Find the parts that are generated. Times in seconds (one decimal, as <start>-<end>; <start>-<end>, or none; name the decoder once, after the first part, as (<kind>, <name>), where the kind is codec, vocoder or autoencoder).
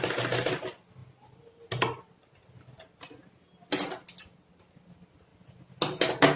none